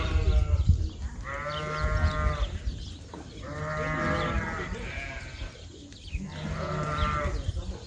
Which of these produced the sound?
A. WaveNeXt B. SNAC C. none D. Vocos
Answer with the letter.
C